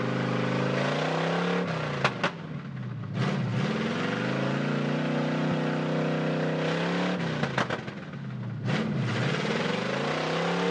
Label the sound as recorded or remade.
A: recorded